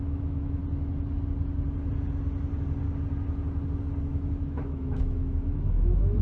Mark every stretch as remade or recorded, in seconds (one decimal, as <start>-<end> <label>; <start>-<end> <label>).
0.0-0.6 remade; 0.6-4.3 recorded; 4.3-6.2 remade